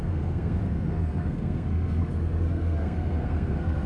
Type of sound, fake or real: fake